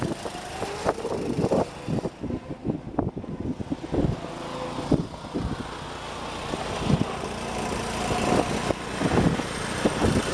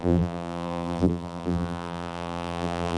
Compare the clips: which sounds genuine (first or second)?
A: first